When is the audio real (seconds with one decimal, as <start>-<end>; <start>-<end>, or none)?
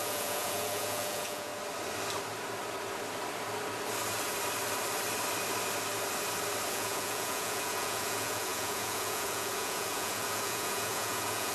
1.5-6.7